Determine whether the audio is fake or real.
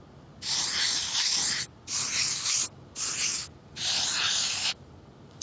real